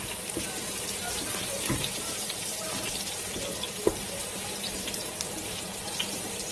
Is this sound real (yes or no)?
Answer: no